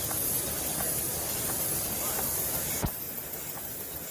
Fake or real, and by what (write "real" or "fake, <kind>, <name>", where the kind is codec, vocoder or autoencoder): fake, vocoder, BigVGAN v2